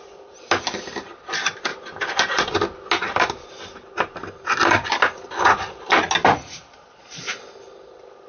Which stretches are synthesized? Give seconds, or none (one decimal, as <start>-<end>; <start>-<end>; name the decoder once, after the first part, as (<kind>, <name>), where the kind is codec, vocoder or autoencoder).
none